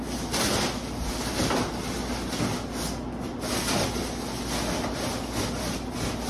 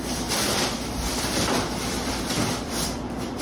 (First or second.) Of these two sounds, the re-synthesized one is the second